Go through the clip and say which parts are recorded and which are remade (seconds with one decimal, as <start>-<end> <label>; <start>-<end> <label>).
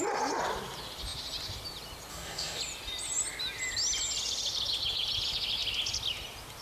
0.0-2.1 recorded; 2.1-2.6 remade; 2.6-6.6 recorded